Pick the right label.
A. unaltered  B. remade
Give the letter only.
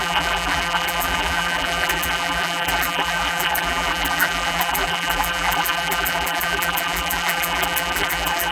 B